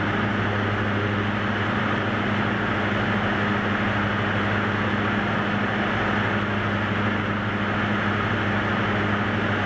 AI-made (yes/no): no